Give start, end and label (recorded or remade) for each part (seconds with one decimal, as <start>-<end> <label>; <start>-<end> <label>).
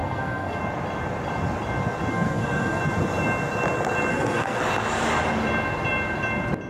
0.0-0.6 remade; 0.6-2.1 recorded; 2.1-2.8 remade; 2.8-4.1 recorded; 4.1-4.6 remade; 4.6-6.7 recorded